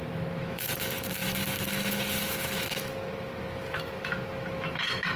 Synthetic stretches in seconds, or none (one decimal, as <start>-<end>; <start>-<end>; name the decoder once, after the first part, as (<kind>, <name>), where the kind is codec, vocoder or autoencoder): 0.0-5.2 (autoencoder, DAC-VAE)